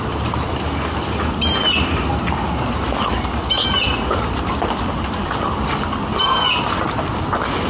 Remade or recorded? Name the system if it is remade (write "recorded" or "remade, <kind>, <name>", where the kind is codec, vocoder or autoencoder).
recorded